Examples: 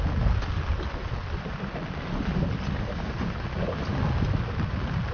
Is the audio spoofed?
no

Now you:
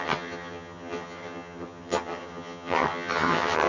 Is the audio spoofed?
yes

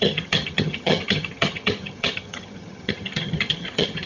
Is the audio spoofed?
yes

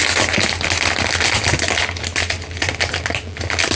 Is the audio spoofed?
no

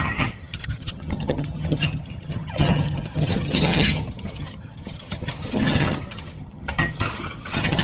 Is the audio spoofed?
yes